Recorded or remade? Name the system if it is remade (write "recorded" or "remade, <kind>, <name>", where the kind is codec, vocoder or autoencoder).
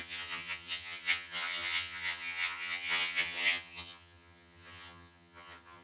remade, vocoder, HiFi-GAN